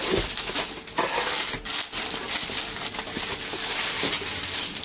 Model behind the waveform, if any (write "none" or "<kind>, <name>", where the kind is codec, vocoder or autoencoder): none